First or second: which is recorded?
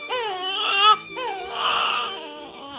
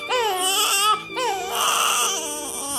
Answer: second